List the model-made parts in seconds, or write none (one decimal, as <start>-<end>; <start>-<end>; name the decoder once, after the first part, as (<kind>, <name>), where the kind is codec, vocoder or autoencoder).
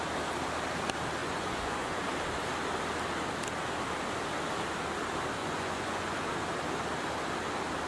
1.2-2.0 (vocoder, Vocos); 5.4-6.2